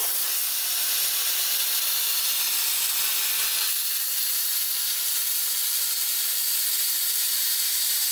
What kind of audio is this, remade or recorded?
recorded